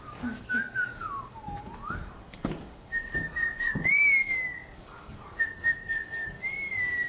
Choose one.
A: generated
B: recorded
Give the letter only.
A